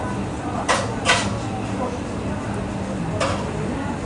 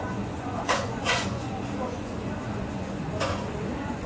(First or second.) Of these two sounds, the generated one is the second